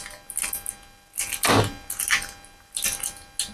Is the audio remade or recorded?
recorded